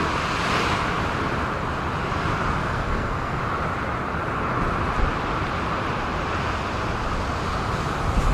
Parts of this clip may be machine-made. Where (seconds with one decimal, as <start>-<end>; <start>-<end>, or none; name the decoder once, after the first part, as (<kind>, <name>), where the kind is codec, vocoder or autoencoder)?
2.6-3.4 (codec, SNAC)